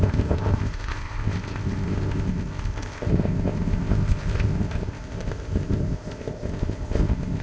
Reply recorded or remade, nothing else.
remade